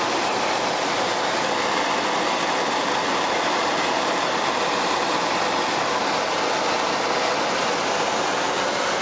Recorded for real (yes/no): yes